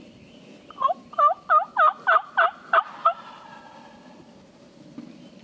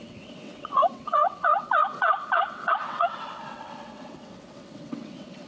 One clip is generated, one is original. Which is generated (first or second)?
second